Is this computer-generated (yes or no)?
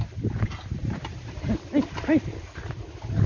no